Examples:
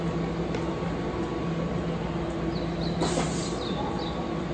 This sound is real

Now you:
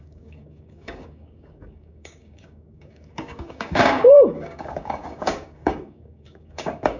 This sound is fake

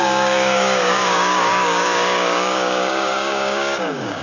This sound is fake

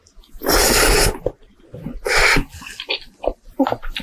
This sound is real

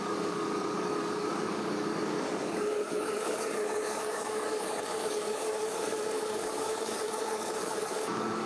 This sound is fake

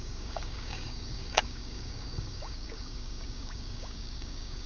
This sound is fake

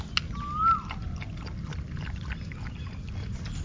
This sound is real